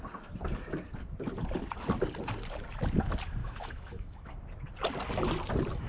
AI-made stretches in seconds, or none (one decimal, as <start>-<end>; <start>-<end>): 3.4-4.3